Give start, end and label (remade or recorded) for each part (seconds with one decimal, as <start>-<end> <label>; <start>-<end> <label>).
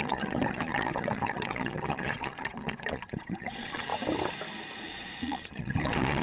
0.0-3.9 remade; 3.9-4.8 recorded; 4.8-6.2 remade